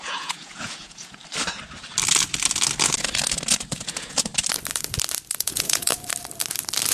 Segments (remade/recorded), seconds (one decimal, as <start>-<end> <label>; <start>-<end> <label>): 0.0-1.2 remade; 1.2-3.7 recorded; 3.7-4.3 remade; 4.3-5.4 recorded; 5.4-5.9 remade; 5.9-6.9 recorded